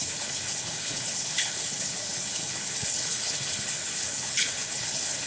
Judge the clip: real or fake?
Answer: fake